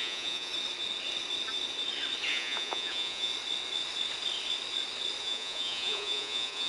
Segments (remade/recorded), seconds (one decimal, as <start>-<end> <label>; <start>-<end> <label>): 0.0-0.5 remade; 0.5-2.3 recorded; 2.3-3.3 remade; 3.3-5.2 recorded; 5.2-6.7 remade

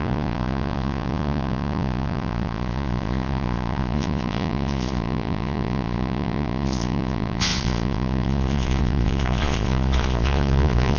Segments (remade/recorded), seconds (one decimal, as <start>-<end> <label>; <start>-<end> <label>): 0.0-11.0 remade

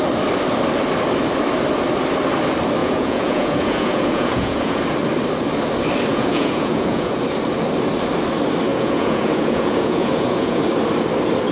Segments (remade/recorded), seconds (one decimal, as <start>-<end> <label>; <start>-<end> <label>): 0.0-2.8 recorded; 2.8-4.8 remade; 4.8-6.1 recorded; 6.1-7.2 remade; 7.2-8.7 recorded; 8.7-10.6 remade; 10.6-11.5 recorded

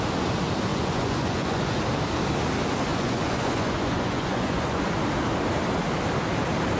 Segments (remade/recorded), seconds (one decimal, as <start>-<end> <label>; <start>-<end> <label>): 0.0-0.7 recorded; 0.7-1.8 remade; 1.8-2.9 recorded; 2.9-4.8 remade; 4.8-6.8 recorded

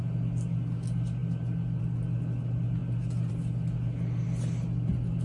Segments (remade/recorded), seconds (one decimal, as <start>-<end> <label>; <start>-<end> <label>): 0.0-5.2 recorded

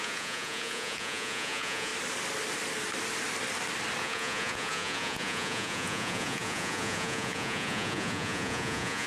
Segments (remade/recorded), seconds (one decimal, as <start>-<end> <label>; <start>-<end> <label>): 0.0-1.9 remade; 1.9-4.0 recorded; 4.0-9.1 remade

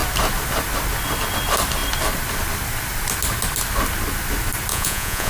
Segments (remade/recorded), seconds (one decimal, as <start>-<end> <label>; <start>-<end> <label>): 0.0-4.7 recorded; 4.7-5.3 remade